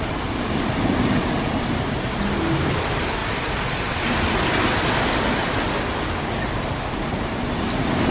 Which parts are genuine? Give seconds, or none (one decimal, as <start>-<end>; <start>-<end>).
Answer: 0.0-8.1